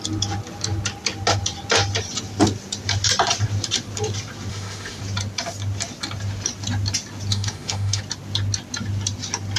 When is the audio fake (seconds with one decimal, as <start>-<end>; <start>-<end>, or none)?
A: 4.5-5.0; 7.3-8.0